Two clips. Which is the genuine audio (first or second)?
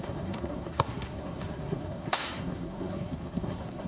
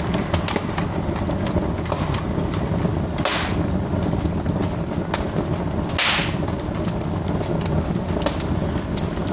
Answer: second